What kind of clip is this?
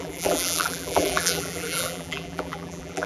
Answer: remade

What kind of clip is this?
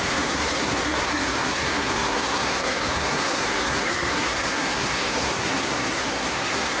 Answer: remade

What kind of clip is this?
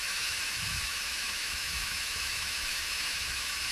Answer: remade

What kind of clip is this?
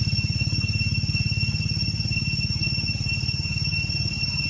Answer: recorded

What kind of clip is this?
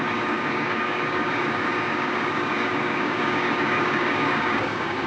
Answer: remade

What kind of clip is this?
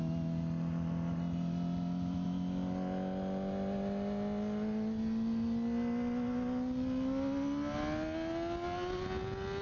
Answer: recorded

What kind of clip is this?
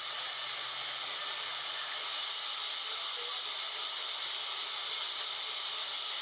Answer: recorded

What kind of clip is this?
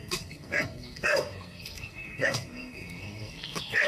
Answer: remade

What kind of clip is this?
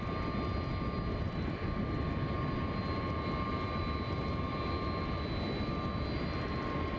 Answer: recorded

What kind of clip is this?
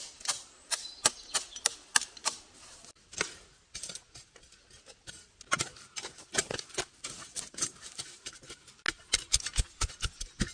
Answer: recorded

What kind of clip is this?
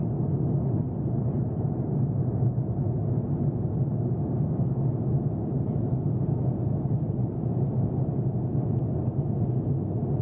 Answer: recorded